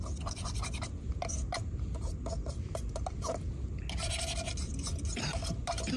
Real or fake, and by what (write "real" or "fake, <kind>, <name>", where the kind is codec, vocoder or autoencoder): real